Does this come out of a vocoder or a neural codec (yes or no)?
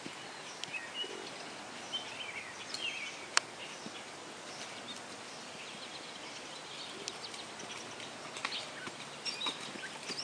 no